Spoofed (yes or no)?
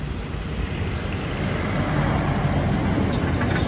no